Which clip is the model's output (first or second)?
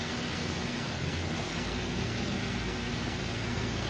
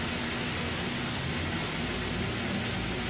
first